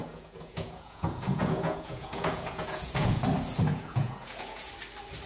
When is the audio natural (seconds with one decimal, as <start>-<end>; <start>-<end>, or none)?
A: 3.2-3.7; 4.7-5.3